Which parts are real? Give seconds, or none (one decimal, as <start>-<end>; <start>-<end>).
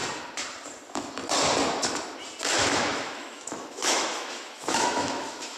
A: 0.0-2.6